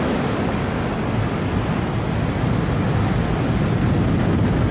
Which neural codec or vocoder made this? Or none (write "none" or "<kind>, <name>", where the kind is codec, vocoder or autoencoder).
none